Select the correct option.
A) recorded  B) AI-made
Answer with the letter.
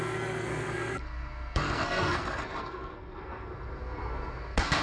B